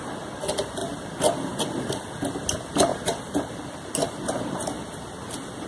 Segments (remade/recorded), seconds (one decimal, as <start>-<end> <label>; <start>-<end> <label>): 0.0-2.9 recorded; 2.9-3.6 remade; 3.6-5.7 recorded